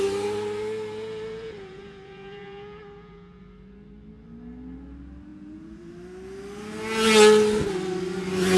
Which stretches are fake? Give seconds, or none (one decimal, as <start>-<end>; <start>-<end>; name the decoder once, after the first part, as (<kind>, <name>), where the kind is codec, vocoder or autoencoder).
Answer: 1.3-3.4 (vocoder, Vocos); 5.3-5.9